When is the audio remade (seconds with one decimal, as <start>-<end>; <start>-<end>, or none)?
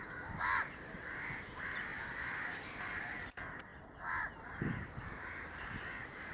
0.0-1.9; 2.8-6.3